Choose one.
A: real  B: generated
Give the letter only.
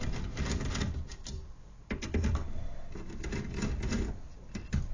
A